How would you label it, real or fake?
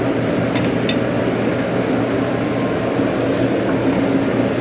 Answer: real